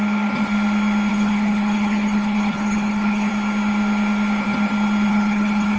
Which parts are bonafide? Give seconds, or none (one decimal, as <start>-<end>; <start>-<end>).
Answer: 0.0-1.1; 3.3-5.1